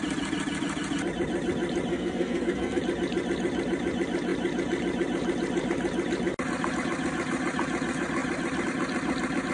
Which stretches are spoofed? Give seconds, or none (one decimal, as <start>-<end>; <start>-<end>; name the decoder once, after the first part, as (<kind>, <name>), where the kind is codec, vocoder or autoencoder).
1.9-2.8 (codec, SNAC)